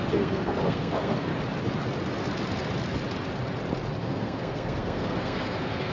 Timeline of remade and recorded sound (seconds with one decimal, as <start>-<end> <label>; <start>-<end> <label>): 0.0-1.3 remade; 1.3-4.0 recorded; 4.0-5.9 remade

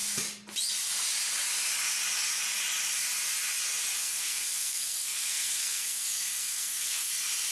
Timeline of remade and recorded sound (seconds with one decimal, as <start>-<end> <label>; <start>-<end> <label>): 0.0-4.0 recorded; 4.0-7.1 remade; 7.1-7.5 recorded

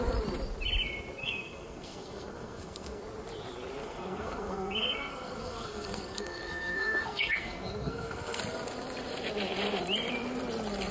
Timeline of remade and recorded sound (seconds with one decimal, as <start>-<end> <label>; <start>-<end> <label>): 0.0-1.2 recorded; 1.2-3.0 remade; 3.0-3.8 recorded; 3.8-8.4 remade; 8.4-10.9 recorded

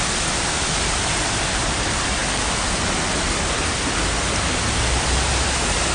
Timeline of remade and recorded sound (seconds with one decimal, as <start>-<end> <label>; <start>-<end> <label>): 0.0-5.9 recorded

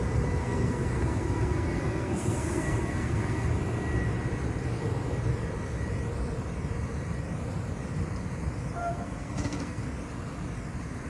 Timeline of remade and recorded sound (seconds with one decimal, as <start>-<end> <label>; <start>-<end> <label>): 0.0-0.4 recorded; 0.4-3.5 remade; 3.5-8.8 recorded; 8.8-9.8 remade; 9.8-11.1 recorded

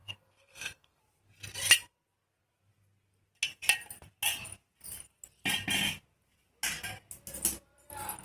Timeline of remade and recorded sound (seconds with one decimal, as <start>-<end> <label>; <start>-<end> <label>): 0.0-1.0 remade; 1.0-8.2 recorded

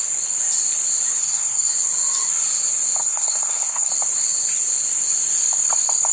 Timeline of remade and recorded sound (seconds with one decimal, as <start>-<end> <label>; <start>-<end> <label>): 0.0-1.2 recorded; 1.2-1.7 remade; 1.7-3.0 recorded; 3.0-3.9 remade; 3.9-6.1 recorded